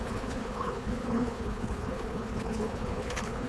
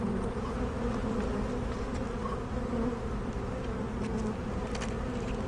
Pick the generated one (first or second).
first